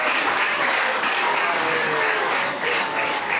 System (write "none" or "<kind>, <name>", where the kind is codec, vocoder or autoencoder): codec, DAC